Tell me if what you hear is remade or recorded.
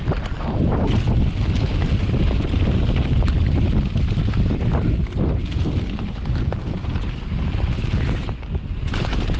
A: recorded